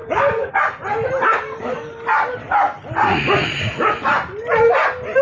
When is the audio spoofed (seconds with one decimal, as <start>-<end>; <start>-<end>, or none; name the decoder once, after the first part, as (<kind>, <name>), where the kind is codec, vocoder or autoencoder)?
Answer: 0.0-0.5 (codec, DAC)